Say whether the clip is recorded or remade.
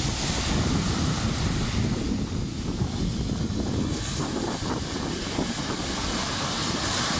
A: recorded